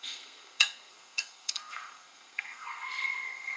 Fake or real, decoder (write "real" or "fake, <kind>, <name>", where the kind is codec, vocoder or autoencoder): fake, codec, SNAC